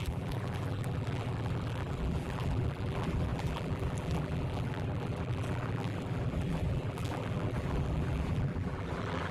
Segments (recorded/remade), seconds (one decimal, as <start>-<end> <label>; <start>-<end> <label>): 0.0-9.3 remade